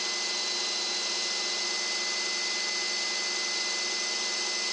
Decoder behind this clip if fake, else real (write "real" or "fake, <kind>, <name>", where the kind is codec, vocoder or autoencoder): real